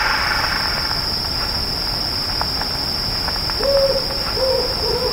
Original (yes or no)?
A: yes